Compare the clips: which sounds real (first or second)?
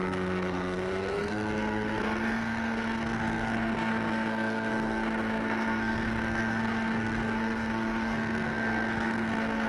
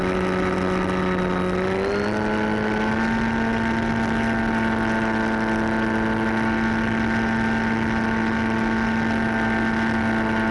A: second